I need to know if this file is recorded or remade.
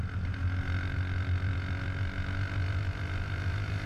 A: recorded